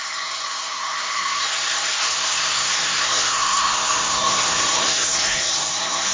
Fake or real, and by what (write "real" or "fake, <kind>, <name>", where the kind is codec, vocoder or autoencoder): fake, codec, SNAC